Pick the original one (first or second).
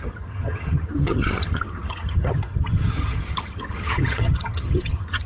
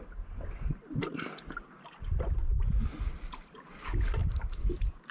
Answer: second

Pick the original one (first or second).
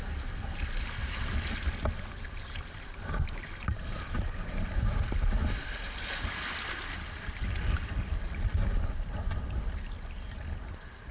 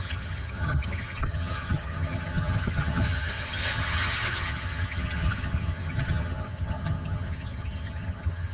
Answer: first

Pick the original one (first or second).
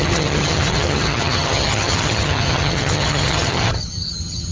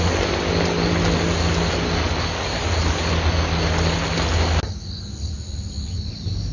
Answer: second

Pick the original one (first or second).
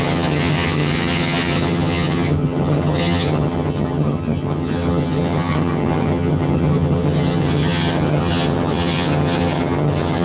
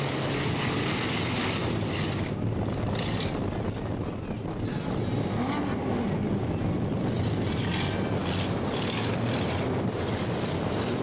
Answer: second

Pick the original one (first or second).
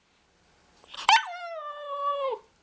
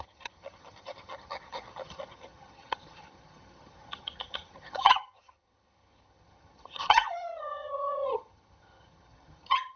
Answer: first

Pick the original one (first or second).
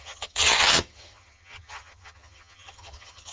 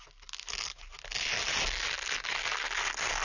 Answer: second